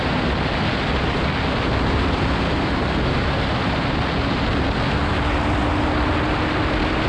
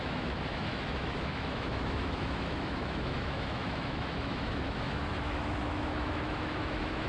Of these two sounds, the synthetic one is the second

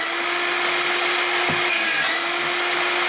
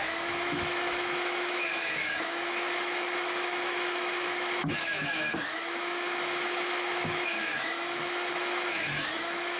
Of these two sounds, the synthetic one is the second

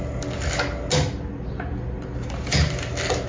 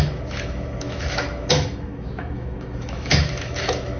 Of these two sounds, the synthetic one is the second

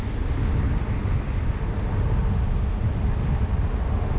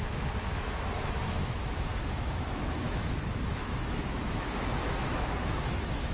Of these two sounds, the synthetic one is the second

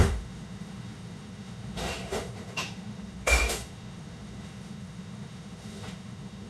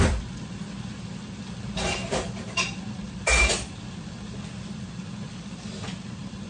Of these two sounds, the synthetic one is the first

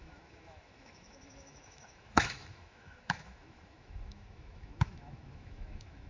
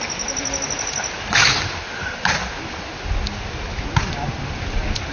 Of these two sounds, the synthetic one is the first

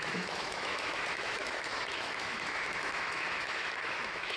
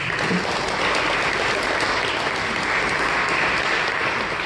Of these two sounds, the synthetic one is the first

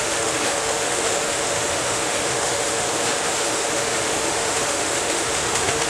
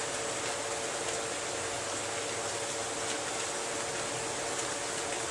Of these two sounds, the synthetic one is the first